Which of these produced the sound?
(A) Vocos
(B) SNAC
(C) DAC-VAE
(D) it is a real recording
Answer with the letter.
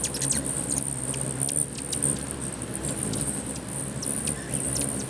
D